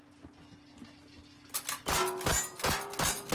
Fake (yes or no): no